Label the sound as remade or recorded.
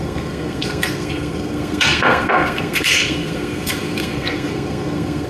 remade